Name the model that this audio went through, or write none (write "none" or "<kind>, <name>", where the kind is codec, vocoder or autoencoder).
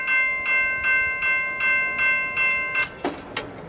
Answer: none